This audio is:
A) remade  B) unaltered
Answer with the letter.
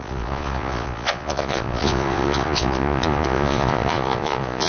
A